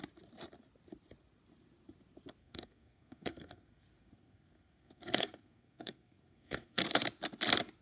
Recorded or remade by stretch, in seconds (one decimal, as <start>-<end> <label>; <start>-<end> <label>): 0.0-2.4 recorded; 2.4-6.8 remade; 6.8-7.8 recorded